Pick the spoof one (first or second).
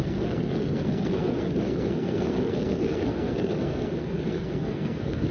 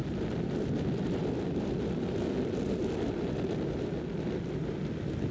first